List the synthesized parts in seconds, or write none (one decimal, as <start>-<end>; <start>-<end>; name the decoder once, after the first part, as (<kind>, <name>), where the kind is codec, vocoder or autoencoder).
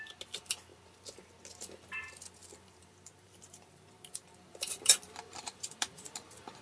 0.7-1.3 (vocoder, BigVGAN v2); 2.4-6.6